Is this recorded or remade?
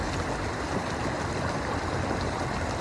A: recorded